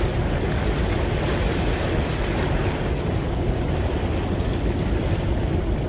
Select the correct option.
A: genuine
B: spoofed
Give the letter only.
A